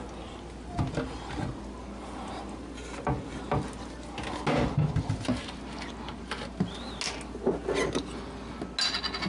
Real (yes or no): yes